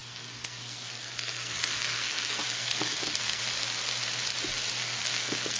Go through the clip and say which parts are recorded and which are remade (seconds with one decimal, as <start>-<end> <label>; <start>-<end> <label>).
0.0-3.4 remade; 3.4-4.8 recorded; 4.8-5.6 remade